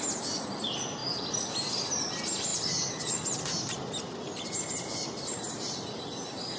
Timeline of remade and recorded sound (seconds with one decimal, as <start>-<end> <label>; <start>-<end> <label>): 0.0-2.5 recorded; 2.5-5.5 remade; 5.5-6.6 recorded